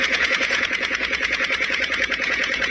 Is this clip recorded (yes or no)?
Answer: no